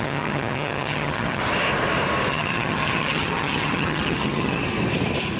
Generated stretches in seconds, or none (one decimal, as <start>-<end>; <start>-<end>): 0.0-1.4; 2.3-4.6